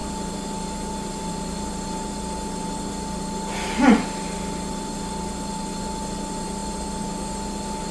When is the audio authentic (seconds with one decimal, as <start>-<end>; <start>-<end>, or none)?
0.0-7.9